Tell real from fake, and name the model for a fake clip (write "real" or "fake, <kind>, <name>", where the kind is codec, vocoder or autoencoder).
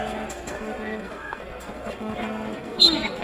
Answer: fake, codec, SNAC